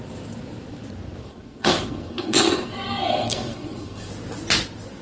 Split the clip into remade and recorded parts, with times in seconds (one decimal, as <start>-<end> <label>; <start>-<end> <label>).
0.0-1.2 recorded; 1.2-4.1 remade; 4.1-5.0 recorded

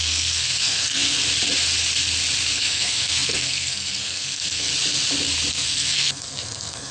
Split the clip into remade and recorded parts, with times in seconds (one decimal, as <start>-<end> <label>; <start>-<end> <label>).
0.0-1.2 remade; 1.2-2.5 recorded; 2.5-4.7 remade; 4.7-5.5 recorded; 5.5-6.9 remade

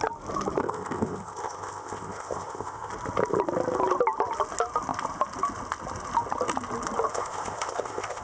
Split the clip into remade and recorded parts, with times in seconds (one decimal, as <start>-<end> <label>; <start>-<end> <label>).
0.0-0.6 recorded; 0.6-2.9 remade; 2.9-7.1 recorded; 7.1-8.2 remade

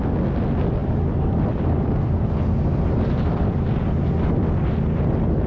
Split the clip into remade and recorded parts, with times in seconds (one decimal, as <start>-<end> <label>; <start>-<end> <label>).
0.0-0.8 recorded; 0.8-4.1 remade; 4.1-5.5 recorded

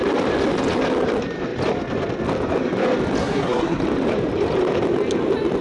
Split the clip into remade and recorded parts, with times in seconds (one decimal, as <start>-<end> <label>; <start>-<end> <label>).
0.0-3.2 recorded; 3.2-3.8 remade; 3.8-5.6 recorded

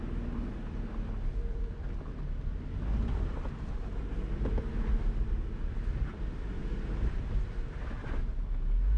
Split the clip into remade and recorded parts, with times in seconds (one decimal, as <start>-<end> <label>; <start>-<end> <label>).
0.0-9.0 recorded